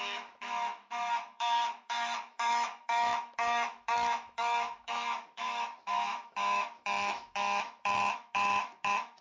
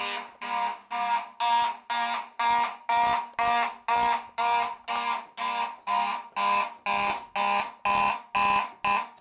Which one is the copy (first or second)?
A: first